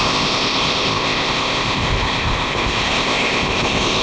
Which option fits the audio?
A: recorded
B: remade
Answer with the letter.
B